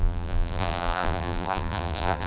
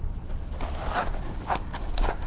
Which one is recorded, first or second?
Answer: second